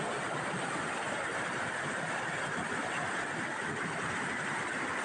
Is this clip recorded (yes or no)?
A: yes